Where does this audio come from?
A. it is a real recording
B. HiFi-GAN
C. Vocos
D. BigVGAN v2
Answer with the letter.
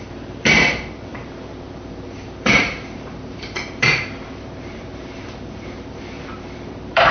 D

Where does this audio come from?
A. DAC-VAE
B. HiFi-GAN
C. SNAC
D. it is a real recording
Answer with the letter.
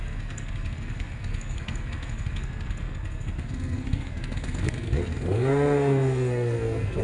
C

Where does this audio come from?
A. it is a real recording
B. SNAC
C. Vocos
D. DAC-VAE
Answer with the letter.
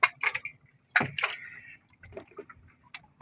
A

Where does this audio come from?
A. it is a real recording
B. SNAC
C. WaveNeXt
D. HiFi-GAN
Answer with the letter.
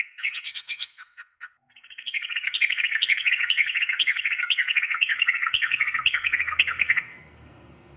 B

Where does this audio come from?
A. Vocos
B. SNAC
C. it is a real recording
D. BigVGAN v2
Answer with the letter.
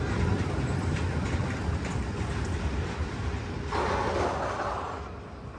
C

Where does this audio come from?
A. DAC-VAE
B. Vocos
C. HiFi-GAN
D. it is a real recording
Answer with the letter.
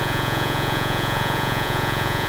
B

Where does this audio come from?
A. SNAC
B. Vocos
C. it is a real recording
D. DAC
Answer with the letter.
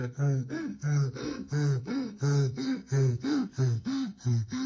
A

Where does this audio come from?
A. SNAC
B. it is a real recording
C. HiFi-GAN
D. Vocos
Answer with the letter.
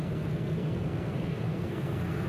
A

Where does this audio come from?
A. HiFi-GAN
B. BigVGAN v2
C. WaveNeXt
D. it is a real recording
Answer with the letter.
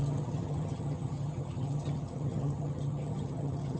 A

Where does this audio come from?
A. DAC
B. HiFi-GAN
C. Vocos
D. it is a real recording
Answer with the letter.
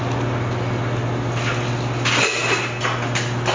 D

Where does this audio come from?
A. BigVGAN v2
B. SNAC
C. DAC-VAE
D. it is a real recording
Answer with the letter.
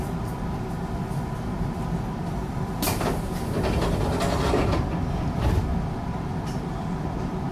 D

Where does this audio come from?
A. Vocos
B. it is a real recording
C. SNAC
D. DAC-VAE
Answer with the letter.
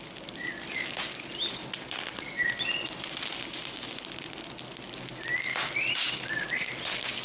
B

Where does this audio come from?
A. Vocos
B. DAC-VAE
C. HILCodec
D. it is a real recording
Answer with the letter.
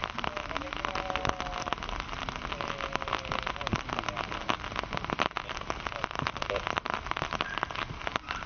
D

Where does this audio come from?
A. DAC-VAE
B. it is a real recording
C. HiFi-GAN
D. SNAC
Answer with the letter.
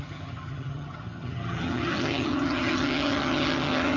C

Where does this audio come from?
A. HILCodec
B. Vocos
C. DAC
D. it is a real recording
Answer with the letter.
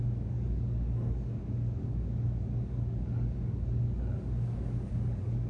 C